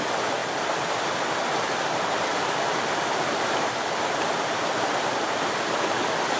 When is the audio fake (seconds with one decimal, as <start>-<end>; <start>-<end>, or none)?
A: none